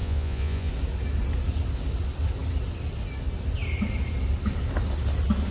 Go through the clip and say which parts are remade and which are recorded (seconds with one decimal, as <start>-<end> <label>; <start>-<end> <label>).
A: 0.0-0.7 remade; 0.7-5.5 recorded